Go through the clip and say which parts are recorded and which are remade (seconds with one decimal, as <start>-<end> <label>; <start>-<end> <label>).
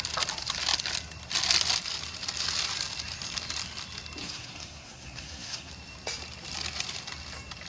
0.0-4.2 recorded; 4.2-5.7 remade; 5.7-7.7 recorded